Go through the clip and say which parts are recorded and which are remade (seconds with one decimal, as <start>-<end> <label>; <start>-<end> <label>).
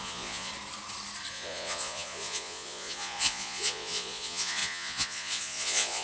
0.0-0.5 remade; 0.5-1.3 recorded; 1.3-6.0 remade